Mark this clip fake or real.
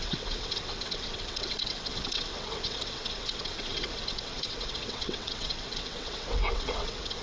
fake